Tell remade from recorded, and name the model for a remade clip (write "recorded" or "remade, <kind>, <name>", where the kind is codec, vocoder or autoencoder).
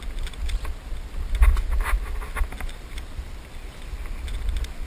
recorded